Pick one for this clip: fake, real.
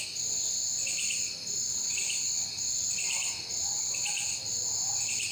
real